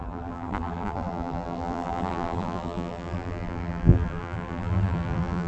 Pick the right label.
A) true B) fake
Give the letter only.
B